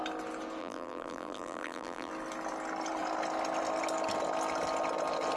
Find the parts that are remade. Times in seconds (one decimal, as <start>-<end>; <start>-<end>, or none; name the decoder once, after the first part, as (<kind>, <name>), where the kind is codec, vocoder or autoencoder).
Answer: 0.6-2.1 (vocoder, BigVGAN v2)